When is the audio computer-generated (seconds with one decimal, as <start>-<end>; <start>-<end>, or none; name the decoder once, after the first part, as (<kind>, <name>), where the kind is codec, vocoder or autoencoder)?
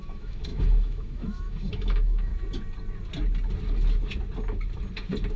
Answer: 0.0-2.3 (autoencoder, DAC-VAE)